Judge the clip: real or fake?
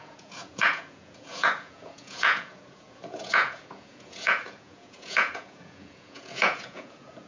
fake